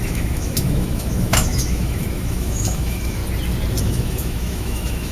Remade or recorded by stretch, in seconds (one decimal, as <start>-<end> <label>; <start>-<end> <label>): 0.0-3.2 remade; 3.2-3.8 recorded; 3.8-5.1 remade